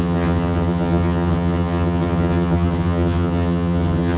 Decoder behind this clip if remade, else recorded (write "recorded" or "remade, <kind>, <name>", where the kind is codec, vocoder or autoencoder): remade, vocoder, HiFi-GAN